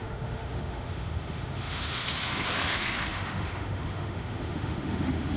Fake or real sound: fake